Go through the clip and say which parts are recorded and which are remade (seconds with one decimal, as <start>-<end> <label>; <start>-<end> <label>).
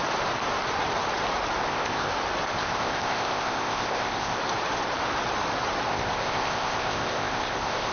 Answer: 0.0-1.6 recorded; 1.6-2.1 remade; 2.1-2.5 recorded; 2.5-4.4 remade; 4.4-5.9 recorded; 5.9-7.9 remade